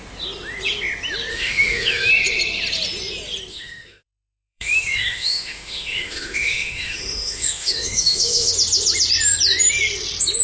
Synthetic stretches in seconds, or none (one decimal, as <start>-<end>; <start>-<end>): 1.3-2.1; 3.5-8.5